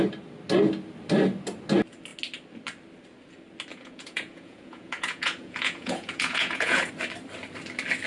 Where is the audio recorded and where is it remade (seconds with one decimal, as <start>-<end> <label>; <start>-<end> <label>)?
0.0-3.7 recorded; 3.7-6.9 remade; 6.9-8.1 recorded